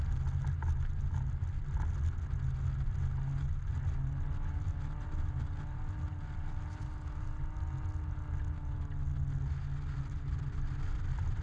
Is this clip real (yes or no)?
yes